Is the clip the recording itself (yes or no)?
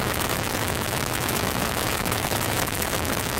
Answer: no